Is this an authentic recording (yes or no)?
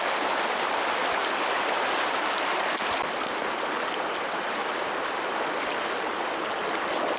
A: yes